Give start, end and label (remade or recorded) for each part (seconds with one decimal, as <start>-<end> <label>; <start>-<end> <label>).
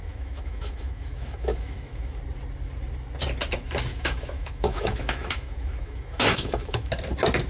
0.0-2.2 remade; 2.2-3.9 recorded; 3.9-6.9 remade; 6.9-7.5 recorded